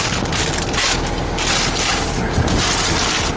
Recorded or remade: recorded